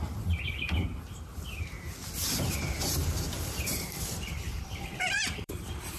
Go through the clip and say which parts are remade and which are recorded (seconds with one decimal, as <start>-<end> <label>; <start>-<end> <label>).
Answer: 0.0-2.2 recorded; 2.2-6.0 remade